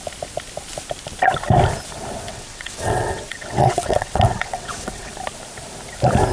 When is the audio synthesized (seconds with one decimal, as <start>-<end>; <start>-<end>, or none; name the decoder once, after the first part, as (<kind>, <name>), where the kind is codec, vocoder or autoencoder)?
2.3-5.1 (vocoder, WaveNeXt)